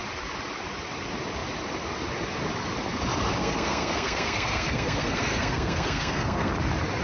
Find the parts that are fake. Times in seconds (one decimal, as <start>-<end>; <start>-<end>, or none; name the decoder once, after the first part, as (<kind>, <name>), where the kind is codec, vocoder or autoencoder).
3.4-6.5 (codec, SNAC)